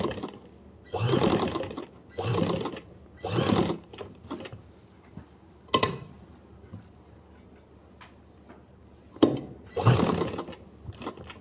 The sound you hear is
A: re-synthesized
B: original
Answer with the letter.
B